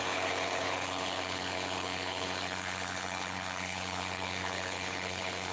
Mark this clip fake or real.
fake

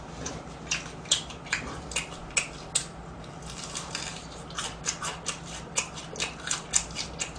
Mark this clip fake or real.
real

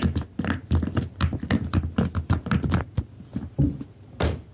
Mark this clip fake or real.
real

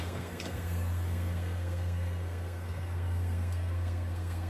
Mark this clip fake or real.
fake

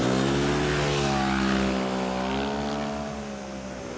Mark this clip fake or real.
real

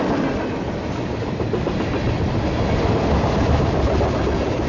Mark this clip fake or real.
real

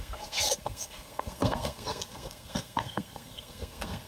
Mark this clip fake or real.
fake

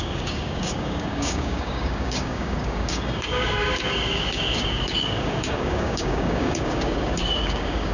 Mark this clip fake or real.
fake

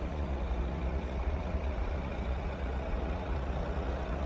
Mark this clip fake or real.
fake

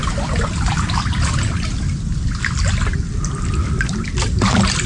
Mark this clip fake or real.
real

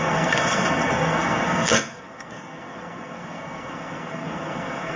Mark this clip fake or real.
fake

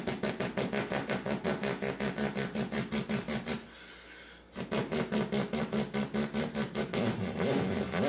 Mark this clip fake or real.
real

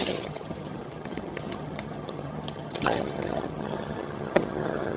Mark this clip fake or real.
fake